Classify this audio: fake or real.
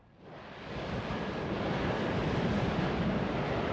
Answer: real